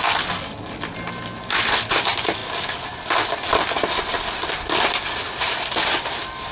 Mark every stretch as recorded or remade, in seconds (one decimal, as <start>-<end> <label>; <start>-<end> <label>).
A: 0.0-6.5 recorded

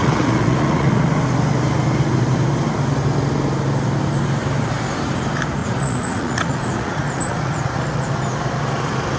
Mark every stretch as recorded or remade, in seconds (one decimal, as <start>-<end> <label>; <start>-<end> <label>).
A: 0.0-1.1 remade; 1.1-5.6 recorded; 5.6-8.0 remade; 8.0-9.2 recorded

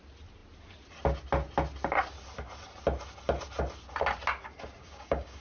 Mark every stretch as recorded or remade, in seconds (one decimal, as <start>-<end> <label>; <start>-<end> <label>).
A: 0.0-4.8 recorded; 4.8-5.4 remade